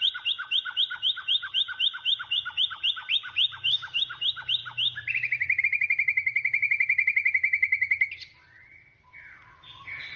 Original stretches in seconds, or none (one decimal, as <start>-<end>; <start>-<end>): 0.0-10.2